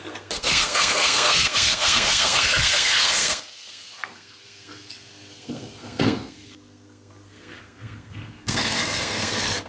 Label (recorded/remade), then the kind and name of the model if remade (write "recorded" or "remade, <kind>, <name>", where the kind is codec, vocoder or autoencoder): remade, codec, SNAC